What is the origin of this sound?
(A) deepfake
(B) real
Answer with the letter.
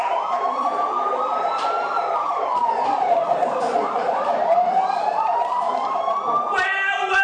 A